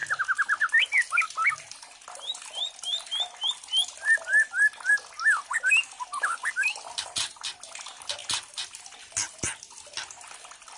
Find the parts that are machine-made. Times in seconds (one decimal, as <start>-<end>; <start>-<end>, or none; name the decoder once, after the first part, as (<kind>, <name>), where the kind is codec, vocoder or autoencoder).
none